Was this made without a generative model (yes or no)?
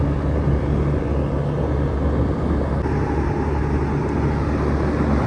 yes